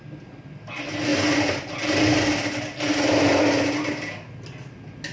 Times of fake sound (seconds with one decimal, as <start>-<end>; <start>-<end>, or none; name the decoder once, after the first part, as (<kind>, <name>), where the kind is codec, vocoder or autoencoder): none